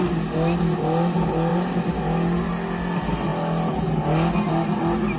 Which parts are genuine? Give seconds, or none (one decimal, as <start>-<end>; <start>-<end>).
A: 0.0-1.5; 2.5-5.2